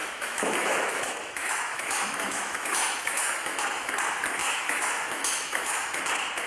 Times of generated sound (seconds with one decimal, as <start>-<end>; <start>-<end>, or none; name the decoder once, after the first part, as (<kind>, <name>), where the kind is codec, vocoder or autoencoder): 0.0-3.9 (autoencoder, DAC-VAE); 4.4-6.0